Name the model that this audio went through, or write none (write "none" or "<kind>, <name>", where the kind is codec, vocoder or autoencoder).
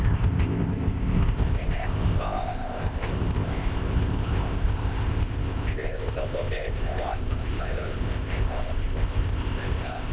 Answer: codec, ZipCodec